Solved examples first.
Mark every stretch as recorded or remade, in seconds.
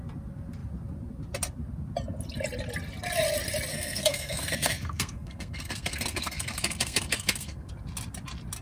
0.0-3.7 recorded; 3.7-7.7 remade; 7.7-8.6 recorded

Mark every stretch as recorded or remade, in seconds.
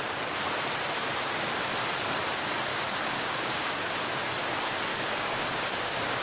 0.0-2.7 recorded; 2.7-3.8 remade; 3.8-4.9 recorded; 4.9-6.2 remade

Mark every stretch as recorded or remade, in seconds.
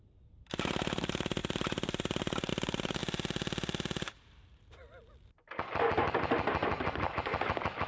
0.0-1.4 recorded; 1.4-2.5 remade; 2.5-7.9 recorded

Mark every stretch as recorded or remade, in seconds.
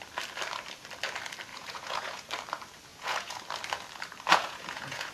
0.0-1.5 recorded; 1.5-2.3 remade; 2.3-2.9 recorded; 2.9-3.4 remade; 3.4-4.3 recorded; 4.3-5.1 remade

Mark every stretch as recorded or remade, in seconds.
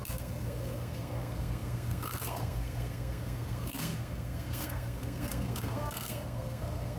0.0-7.0 remade